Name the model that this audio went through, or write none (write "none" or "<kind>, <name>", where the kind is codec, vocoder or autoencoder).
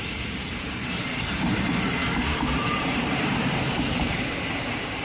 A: vocoder, BigVGAN v2